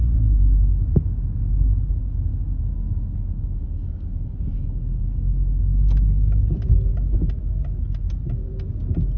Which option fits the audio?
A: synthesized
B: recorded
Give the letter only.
B